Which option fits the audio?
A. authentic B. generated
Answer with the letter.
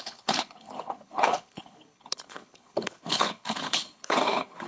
B